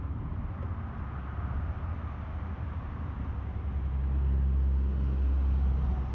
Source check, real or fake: real